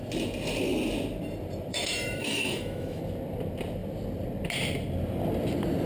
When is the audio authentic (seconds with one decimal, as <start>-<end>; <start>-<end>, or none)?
0.0-1.7; 3.0-5.9